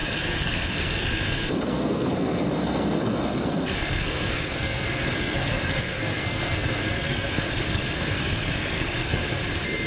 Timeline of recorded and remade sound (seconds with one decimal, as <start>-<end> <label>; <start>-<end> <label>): 0.0-9.2 remade; 9.2-9.9 recorded